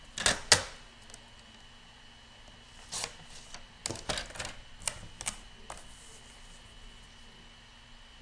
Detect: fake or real real